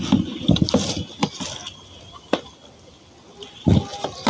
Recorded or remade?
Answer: recorded